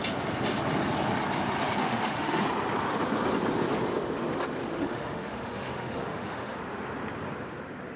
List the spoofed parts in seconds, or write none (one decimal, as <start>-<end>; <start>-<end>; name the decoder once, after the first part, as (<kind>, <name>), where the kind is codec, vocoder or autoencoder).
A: 1.8-2.4 (autoencoder, DAC-VAE); 4.6-6.6